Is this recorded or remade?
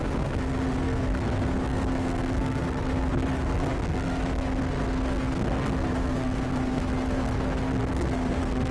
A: remade